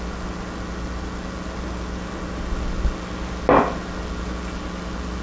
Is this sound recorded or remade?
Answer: recorded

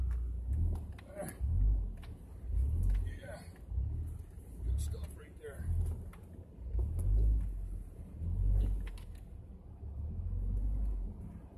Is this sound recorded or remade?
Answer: recorded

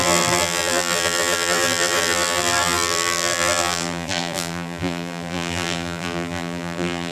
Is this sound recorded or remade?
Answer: remade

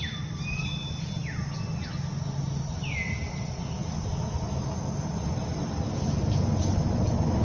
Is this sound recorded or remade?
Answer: recorded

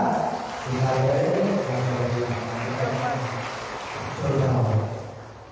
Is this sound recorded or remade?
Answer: recorded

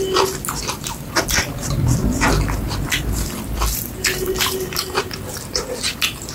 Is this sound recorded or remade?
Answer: remade